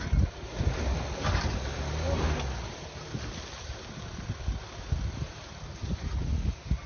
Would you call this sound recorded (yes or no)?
yes